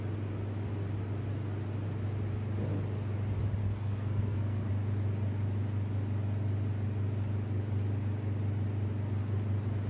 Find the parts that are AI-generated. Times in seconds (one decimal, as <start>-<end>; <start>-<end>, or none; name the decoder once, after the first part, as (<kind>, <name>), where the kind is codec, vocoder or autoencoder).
3.6-4.7 (codec, SNAC)